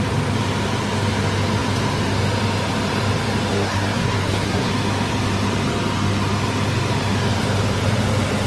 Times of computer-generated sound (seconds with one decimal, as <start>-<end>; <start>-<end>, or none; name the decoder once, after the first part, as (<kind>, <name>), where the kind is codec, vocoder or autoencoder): 3.5-4.7 (codec, SNAC)